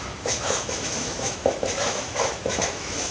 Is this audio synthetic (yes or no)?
yes